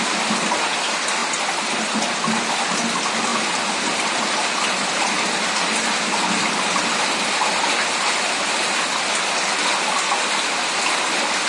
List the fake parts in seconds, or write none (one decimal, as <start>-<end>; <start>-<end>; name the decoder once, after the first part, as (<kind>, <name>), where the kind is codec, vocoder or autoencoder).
none

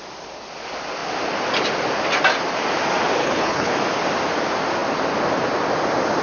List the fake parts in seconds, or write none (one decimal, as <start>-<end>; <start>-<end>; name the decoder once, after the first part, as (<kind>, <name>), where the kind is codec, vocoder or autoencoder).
3.2-3.7 (codec, HILCodec)

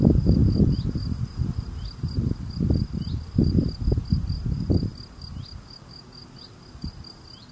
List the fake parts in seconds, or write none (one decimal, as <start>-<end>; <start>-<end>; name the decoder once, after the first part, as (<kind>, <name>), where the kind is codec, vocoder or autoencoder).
none

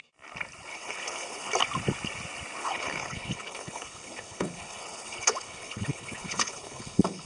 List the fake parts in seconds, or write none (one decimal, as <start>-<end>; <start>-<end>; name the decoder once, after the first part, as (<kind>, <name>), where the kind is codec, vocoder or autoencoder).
0.7-1.5 (codec, HILCodec); 2.6-7.3

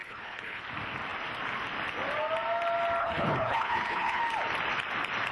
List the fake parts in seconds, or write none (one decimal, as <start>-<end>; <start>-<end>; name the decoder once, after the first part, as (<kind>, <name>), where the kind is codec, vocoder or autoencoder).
0.0-0.6 (codec, HILCodec); 3.0-4.2

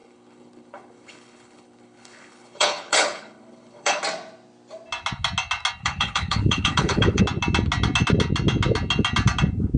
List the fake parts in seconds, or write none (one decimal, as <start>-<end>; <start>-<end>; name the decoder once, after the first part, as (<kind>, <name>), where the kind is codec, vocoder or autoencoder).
0.0-4.0 (codec, HILCodec); 5.8-7.2